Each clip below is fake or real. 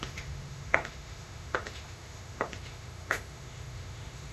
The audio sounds fake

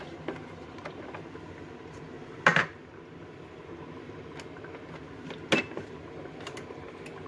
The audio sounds real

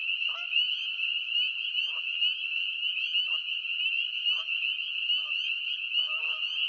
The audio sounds real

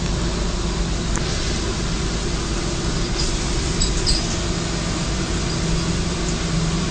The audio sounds real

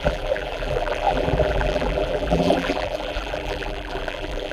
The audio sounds fake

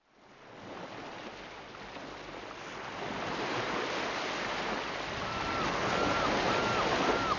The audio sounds real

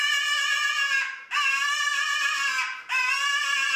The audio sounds real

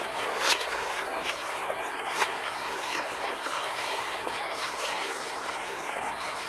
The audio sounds fake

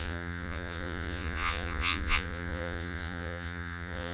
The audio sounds fake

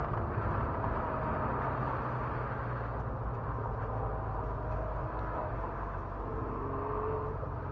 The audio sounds real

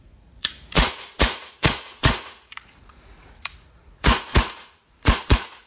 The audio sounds fake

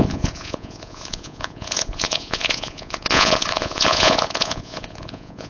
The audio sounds fake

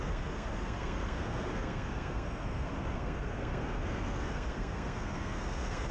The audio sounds fake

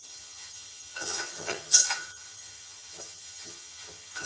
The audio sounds fake